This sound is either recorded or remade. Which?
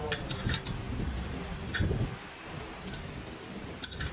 recorded